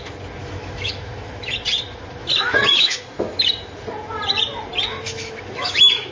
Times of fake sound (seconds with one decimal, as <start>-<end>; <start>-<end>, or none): 0.4-1.5; 2.2-3.0; 4.9-6.1